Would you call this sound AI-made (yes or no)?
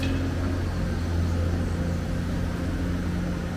no